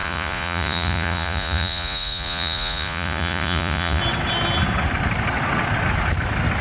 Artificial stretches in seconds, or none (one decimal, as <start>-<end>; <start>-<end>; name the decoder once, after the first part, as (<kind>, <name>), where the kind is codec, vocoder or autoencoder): 0.0-4.0 (vocoder, Vocos)